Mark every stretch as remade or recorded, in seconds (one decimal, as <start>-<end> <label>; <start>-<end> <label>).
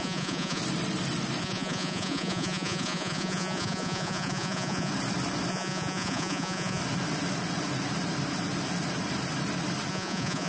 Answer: 0.0-0.6 remade; 0.6-1.4 recorded; 1.4-4.9 remade; 4.9-5.5 recorded; 5.5-6.8 remade; 6.8-9.9 recorded; 9.9-10.5 remade